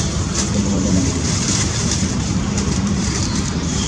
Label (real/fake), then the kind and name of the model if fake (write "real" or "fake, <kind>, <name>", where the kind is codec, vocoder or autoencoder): fake, vocoder, BigVGAN v2